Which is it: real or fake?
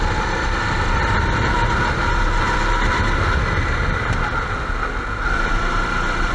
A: real